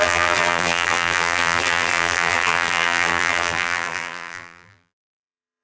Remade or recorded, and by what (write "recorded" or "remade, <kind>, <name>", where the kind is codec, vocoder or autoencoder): remade, vocoder, BigVGAN v2